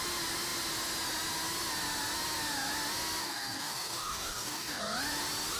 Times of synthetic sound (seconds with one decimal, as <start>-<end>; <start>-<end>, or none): 3.2-4.8